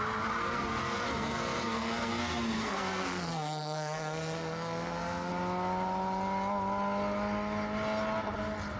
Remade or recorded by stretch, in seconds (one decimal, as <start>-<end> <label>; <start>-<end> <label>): 0.0-0.4 recorded; 0.4-5.3 remade; 5.3-8.8 recorded